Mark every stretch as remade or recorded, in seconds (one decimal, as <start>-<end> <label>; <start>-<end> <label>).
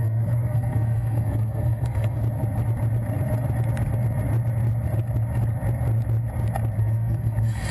0.0-2.2 remade; 2.2-6.8 recorded; 6.8-7.7 remade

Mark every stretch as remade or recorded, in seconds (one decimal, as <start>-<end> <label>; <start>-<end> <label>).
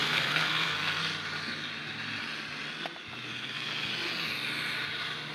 0.0-1.0 remade; 1.0-3.3 recorded; 3.3-3.9 remade; 3.9-5.3 recorded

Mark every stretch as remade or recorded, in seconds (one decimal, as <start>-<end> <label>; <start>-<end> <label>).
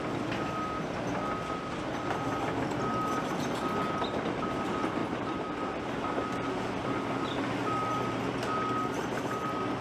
0.0-9.8 recorded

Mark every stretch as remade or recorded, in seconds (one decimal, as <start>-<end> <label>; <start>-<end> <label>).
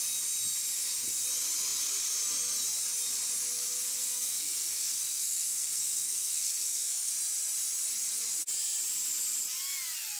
0.0-4.0 recorded; 4.0-7.1 remade; 7.1-10.2 recorded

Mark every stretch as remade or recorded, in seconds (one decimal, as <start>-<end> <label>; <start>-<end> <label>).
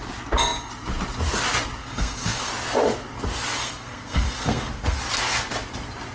0.0-1.8 recorded; 1.8-2.5 remade; 2.5-3.6 recorded; 3.6-5.0 remade; 5.0-6.1 recorded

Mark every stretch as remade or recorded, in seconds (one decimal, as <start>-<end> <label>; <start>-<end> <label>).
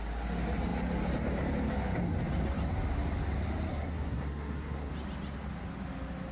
0.0-3.7 recorded; 3.7-4.9 remade; 4.9-6.3 recorded